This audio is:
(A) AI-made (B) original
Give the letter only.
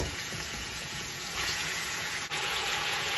A